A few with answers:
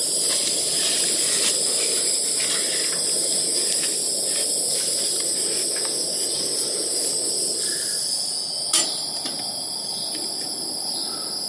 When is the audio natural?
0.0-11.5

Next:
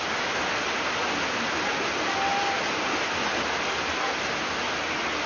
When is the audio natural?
0.0-5.3

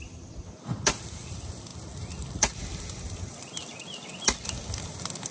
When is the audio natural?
0.0-5.3

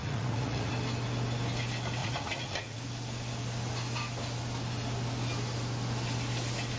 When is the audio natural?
0.7-2.0; 2.8-6.8

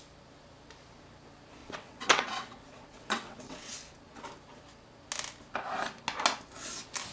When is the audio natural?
0.0-1.6; 3.7-7.1

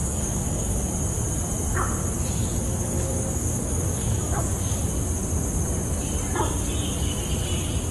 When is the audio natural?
0.9-2.4; 4.8-7.9

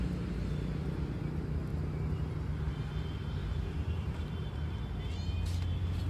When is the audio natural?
0.0-3.4; 4.2-6.1

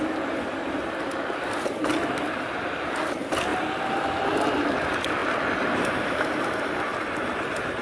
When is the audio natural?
0.0-3.5; 4.3-6.9